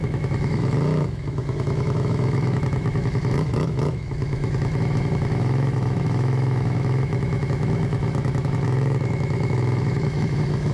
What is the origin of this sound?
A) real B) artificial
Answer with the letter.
B